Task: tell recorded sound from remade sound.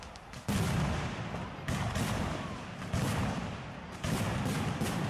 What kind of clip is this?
recorded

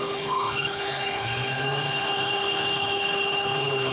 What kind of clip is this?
remade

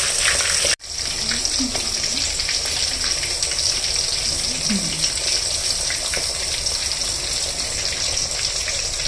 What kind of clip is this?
recorded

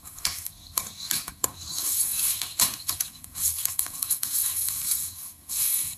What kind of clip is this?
remade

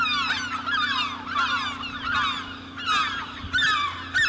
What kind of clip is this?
recorded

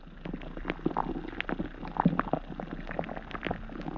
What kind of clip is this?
recorded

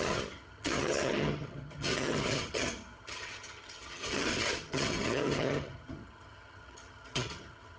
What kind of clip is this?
remade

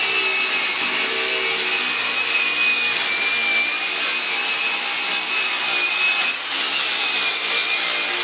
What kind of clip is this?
recorded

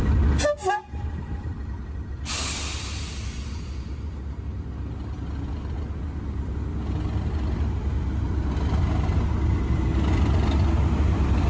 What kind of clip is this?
recorded